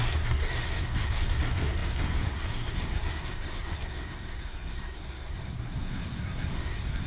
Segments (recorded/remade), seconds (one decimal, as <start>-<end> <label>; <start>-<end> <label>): 0.0-7.1 remade